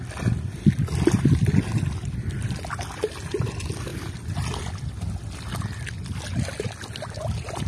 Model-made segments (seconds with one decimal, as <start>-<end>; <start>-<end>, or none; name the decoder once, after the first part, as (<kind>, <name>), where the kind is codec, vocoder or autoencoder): none